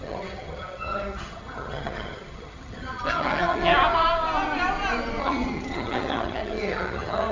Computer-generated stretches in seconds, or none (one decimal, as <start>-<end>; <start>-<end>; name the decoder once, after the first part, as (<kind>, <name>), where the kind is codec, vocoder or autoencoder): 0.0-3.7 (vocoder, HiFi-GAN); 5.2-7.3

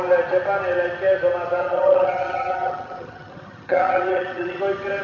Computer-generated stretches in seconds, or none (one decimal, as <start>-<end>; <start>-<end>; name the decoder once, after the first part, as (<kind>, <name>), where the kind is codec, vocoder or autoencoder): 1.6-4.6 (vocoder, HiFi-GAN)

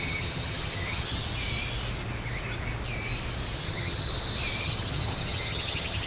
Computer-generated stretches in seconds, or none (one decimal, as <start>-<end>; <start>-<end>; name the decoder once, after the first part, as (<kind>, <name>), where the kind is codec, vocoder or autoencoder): 0.0-1.2 (vocoder, HiFi-GAN); 3.6-4.1; 4.6-6.1

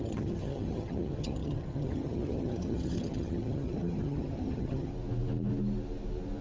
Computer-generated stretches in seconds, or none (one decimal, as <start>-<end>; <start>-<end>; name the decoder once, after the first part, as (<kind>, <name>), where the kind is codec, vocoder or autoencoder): 0.0-4.9 (vocoder, HiFi-GAN)

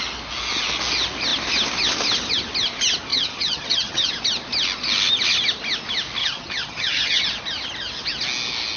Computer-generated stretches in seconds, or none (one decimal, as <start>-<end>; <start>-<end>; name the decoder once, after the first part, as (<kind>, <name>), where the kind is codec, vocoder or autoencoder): 3.1-4.1 (vocoder, HiFi-GAN); 6.2-7.2

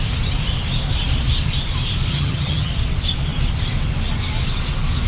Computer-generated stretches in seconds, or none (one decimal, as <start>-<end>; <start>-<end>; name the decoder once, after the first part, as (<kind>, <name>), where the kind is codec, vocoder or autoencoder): 2.1-2.7 (vocoder, HiFi-GAN)